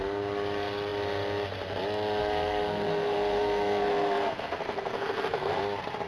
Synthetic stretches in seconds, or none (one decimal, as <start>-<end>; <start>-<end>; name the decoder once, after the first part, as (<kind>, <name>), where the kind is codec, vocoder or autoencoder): 2.2-5.6 (codec, SNAC)